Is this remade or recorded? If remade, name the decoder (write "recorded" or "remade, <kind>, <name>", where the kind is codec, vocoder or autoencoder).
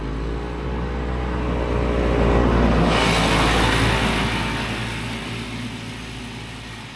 recorded